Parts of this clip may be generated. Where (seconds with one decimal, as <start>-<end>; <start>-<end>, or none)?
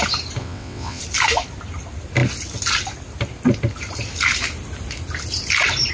0.4-1.0